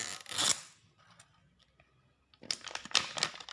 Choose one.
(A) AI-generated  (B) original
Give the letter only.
B